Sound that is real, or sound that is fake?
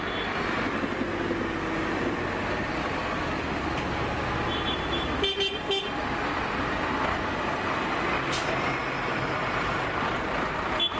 real